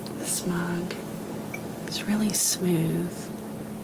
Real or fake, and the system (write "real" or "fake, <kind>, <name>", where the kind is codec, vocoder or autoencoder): real